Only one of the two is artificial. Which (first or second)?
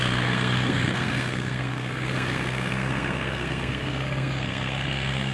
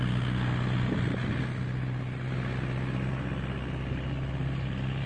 first